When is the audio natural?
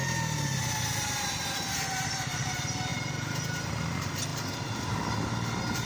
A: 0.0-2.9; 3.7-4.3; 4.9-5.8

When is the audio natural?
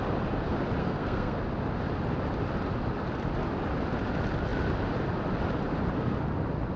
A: 0.0-0.8; 1.4-6.8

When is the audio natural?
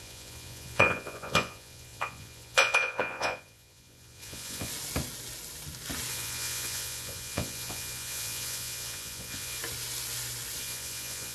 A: 4.7-6.1; 9.6-10.6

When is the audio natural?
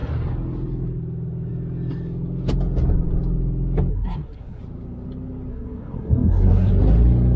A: 0.0-3.9; 4.6-5.5; 6.7-7.4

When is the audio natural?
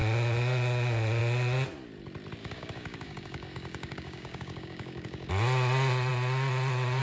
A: 0.0-2.4; 5.3-7.0